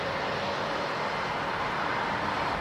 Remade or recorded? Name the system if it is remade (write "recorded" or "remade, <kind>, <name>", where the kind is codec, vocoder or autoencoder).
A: recorded